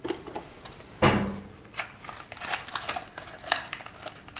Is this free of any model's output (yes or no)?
yes